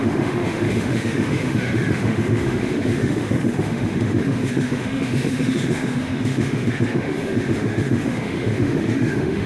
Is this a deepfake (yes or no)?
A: yes